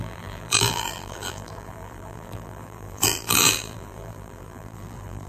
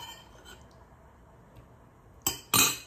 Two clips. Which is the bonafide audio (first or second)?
second